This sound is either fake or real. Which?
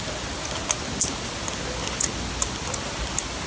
real